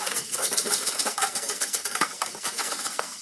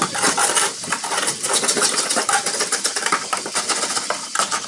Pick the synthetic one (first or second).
first